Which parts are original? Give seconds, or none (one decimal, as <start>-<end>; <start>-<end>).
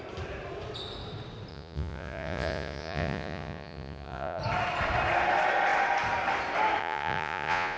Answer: 0.0-1.5; 4.4-6.8